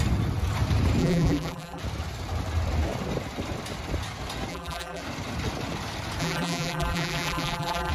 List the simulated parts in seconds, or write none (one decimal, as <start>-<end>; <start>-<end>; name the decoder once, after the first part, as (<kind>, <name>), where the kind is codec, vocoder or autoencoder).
1.0-1.8 (vocoder, BigVGAN v2); 4.5-5.0; 6.2-7.9